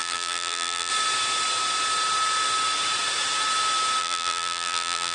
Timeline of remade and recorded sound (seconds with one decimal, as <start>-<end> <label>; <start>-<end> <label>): 0.0-0.9 remade; 0.9-4.0 recorded; 4.0-5.1 remade